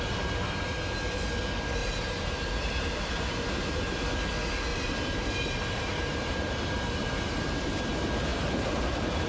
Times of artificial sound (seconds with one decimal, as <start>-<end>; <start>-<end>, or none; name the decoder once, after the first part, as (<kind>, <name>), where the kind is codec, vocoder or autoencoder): 1.8-4.0 (vocoder, BigVGAN v2); 4.7-7.8; 8.3-9.3